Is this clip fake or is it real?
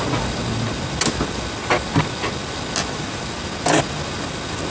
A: real